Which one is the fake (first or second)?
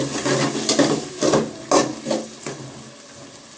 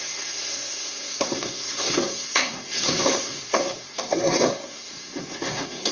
second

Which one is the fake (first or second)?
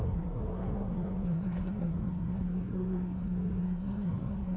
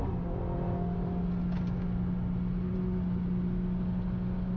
first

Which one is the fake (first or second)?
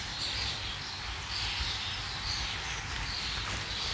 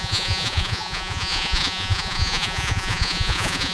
second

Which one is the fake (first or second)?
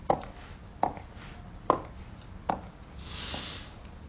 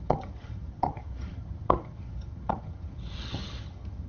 second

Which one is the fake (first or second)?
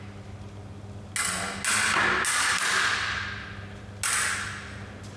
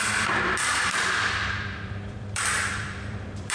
second